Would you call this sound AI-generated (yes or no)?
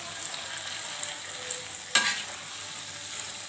no